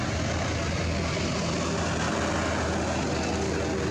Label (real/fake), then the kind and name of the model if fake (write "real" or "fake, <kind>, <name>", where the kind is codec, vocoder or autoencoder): real